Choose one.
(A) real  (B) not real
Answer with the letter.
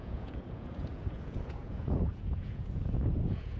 B